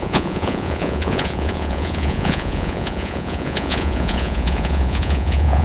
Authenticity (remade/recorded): remade